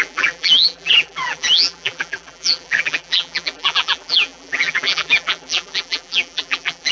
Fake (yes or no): yes